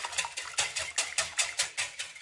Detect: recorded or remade recorded